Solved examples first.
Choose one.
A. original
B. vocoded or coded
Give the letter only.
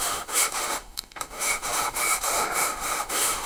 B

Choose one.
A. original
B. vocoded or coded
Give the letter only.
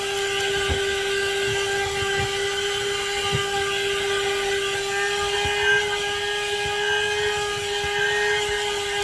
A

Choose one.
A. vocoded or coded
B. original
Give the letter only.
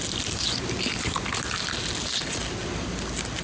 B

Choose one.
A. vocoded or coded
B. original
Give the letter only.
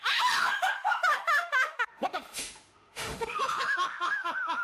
A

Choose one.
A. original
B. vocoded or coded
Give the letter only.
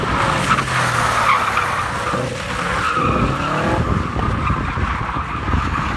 A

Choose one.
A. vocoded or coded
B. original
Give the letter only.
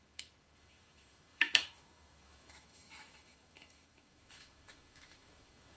A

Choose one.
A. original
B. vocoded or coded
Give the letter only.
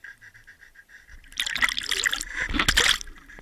A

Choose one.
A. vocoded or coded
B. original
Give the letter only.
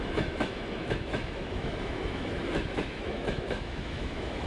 A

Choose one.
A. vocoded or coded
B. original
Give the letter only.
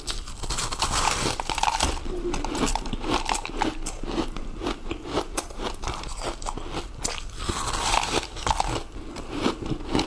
B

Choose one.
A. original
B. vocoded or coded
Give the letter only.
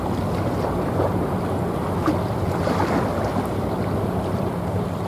A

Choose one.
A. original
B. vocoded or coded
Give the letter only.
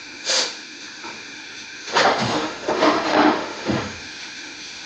B